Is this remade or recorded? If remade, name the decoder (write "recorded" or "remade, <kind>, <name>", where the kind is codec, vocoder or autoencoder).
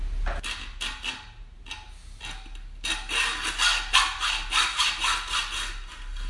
recorded